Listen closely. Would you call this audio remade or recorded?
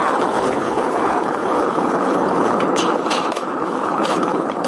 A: remade